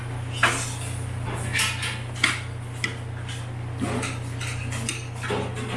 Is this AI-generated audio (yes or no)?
no